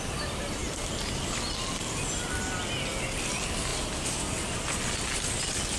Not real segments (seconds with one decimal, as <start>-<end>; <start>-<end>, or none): none